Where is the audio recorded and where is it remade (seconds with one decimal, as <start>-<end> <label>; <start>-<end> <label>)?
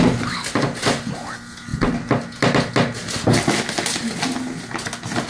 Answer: 0.0-5.3 recorded